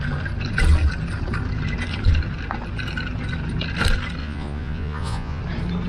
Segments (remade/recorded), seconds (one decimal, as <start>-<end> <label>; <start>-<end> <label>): 0.0-4.2 recorded; 4.2-5.4 remade; 5.4-5.9 recorded